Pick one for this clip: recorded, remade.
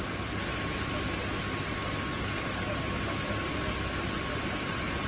recorded